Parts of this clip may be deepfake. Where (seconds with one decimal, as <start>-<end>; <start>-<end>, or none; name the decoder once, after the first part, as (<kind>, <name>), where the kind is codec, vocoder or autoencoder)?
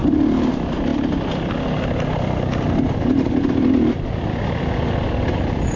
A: none